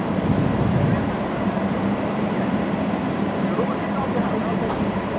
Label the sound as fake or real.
fake